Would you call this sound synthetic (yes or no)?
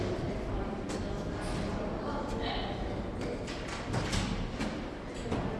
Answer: no